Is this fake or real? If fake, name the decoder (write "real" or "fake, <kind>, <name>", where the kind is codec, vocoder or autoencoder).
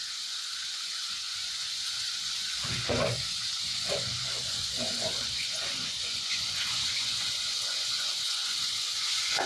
fake, vocoder, Vocos